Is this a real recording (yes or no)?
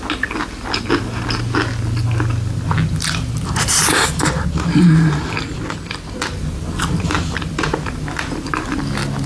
yes